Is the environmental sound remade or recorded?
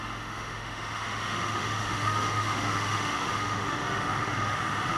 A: remade